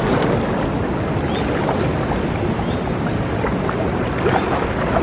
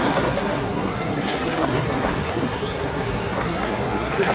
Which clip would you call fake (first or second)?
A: second